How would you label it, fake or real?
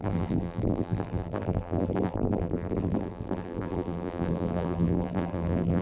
fake